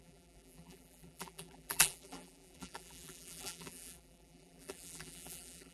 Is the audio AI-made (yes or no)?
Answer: yes